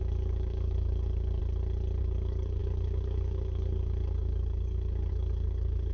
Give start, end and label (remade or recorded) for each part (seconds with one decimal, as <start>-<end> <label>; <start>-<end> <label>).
0.0-1.4 remade; 1.4-2.0 recorded; 2.0-5.9 remade